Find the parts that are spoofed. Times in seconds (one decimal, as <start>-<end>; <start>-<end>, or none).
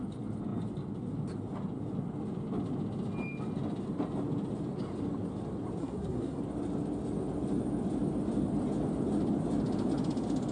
5.8-6.4